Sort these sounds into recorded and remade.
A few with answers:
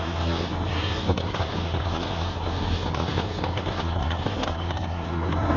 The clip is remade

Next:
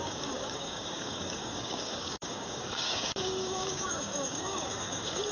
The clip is remade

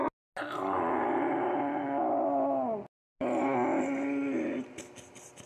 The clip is recorded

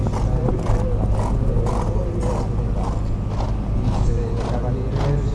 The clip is recorded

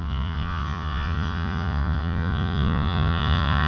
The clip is remade